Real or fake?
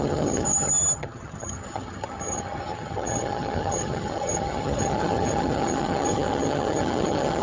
fake